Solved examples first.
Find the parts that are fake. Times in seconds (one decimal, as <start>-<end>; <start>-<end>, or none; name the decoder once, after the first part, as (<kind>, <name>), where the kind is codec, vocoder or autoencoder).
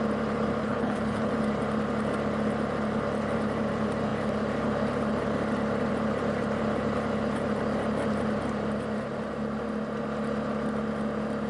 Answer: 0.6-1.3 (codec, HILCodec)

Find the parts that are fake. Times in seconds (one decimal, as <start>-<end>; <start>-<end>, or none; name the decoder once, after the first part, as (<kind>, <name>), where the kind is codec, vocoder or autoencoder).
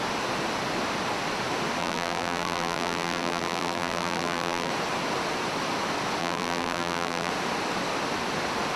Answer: 1.8-4.7 (vocoder, BigVGAN v2); 6.2-7.3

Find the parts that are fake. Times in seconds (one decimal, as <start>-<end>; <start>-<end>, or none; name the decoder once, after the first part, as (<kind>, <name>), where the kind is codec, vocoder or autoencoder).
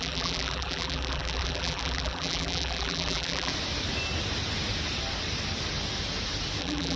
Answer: 0.0-3.5 (vocoder, BigVGAN v2); 6.6-7.0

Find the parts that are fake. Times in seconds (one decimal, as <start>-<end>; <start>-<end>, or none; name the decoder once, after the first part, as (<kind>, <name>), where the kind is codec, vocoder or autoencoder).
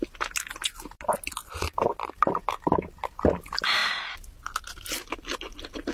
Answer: none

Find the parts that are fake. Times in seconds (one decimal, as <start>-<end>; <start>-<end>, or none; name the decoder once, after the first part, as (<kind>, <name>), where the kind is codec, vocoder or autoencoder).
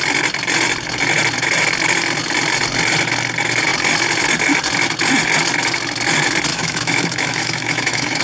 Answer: 6.5-8.2 (autoencoder, DAC-VAE)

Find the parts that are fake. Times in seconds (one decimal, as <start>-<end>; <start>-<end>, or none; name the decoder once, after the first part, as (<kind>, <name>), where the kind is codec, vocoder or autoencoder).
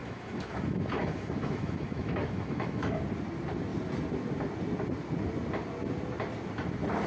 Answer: 0.0-3.0 (autoencoder, DAC-VAE)